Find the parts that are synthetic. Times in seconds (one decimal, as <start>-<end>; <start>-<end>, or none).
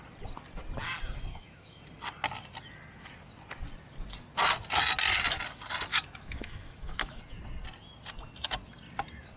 1.3-1.8; 5.9-7.2